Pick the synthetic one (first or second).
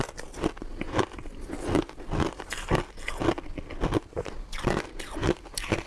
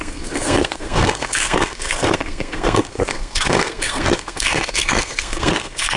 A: second